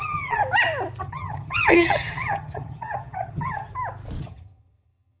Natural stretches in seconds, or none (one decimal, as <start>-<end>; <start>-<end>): 0.4-1.0; 3.7-4.2